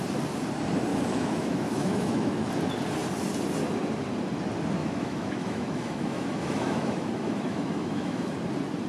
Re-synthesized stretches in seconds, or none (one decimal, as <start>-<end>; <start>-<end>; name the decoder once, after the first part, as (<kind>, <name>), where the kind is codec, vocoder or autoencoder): 0.9-2.5 (autoencoder, DAC-VAE); 4.8-8.3